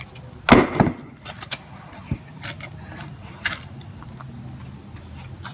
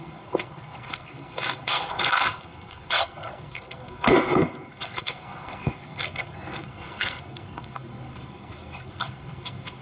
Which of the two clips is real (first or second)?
first